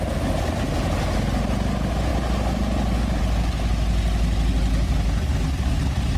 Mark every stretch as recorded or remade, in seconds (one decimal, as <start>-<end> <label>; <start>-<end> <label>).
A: 0.0-6.2 recorded